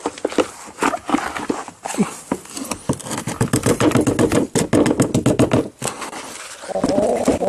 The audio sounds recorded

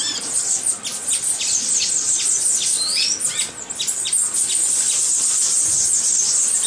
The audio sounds recorded